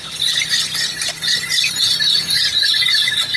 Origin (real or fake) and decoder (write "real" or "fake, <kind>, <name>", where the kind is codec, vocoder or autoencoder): real